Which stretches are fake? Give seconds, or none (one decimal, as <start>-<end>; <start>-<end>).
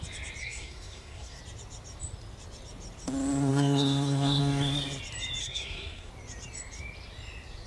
0.4-1.4; 3.5-4.4; 5.4-6.1